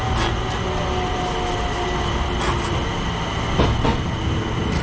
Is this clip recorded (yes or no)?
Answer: yes